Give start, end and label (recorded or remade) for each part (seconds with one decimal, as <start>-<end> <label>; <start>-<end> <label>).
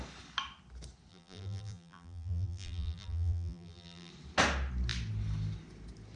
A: 0.0-1.1 recorded; 1.1-4.1 remade; 4.1-6.2 recorded